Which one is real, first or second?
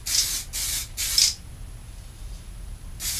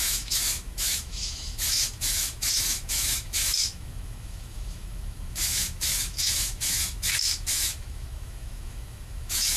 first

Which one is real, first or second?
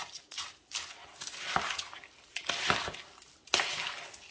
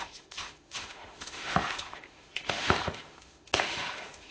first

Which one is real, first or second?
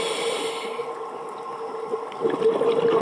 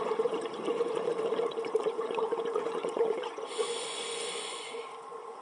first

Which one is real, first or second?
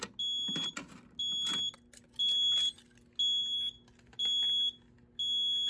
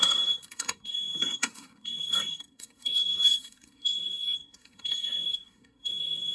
first